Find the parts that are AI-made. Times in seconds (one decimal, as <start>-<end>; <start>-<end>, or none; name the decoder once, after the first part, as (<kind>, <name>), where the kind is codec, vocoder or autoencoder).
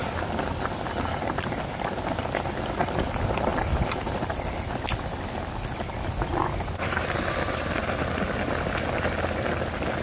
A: none